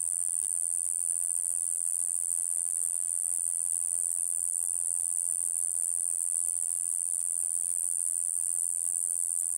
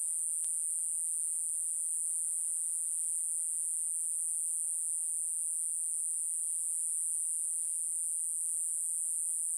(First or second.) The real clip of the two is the second